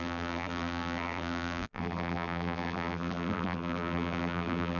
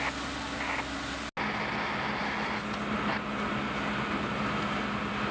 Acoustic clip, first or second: second